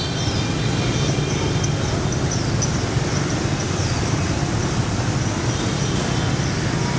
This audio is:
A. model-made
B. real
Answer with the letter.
B